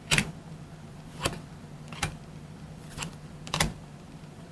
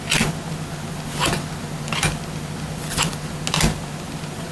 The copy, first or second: first